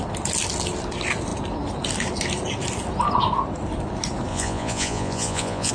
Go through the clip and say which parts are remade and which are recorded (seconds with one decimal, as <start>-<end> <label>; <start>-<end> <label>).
0.0-4.3 recorded; 4.3-5.7 remade